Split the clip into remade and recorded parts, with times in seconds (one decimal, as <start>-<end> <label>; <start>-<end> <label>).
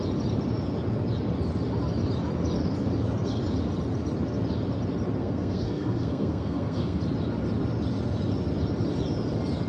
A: 0.0-5.2 recorded; 5.2-7.0 remade; 7.0-9.7 recorded